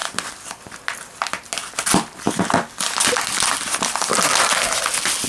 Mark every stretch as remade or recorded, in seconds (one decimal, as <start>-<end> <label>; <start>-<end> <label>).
0.0-5.3 recorded